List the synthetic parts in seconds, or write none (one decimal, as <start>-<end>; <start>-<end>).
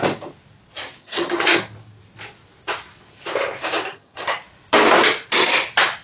1.0-1.6; 3.9-4.4